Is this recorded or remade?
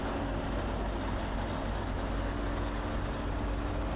recorded